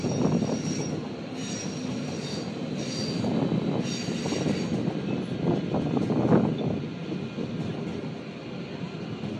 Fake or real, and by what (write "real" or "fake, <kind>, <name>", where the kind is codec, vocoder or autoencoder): real